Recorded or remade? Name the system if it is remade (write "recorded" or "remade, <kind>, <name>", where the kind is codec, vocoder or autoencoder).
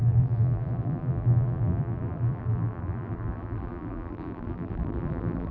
remade, vocoder, BigVGAN v2